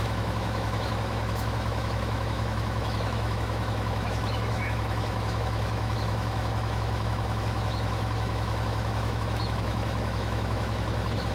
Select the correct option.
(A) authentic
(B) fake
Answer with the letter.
B